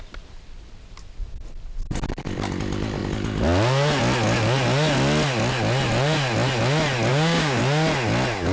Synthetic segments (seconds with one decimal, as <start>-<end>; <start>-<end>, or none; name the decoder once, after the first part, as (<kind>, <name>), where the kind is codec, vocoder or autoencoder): 7.1-7.6 (codec, DAC)